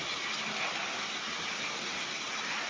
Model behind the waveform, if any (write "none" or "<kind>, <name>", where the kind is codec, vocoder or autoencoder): none